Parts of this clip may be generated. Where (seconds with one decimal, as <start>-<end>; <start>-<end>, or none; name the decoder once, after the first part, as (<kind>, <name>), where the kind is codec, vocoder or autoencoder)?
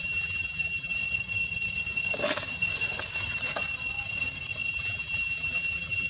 0.0-1.0 (vocoder, BigVGAN v2); 4.7-6.1